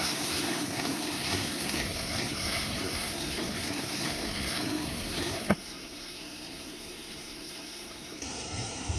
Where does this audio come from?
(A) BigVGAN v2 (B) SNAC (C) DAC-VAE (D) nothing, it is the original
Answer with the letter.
B